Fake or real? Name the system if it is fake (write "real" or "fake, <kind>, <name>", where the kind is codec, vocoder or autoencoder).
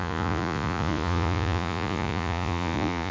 fake, vocoder, Vocos